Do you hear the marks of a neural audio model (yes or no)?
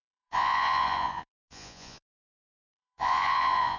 yes